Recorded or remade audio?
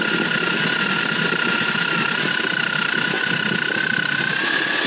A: recorded